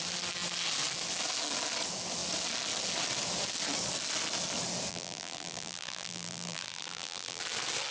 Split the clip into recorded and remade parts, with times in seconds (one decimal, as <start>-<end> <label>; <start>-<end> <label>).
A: 0.0-4.9 recorded; 4.9-7.4 remade; 7.4-7.9 recorded